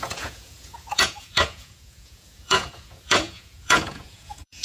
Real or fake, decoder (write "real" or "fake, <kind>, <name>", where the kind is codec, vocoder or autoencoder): fake, vocoder, Vocos